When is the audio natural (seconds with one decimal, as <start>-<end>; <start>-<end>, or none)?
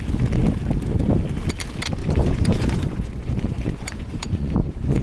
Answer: 0.0-2.0